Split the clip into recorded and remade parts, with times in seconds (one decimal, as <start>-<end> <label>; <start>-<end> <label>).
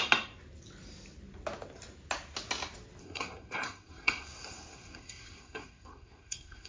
0.0-3.0 recorded; 3.0-6.7 remade